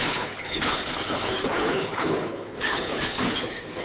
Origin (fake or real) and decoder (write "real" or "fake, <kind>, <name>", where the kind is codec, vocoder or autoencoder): fake, codec, HILCodec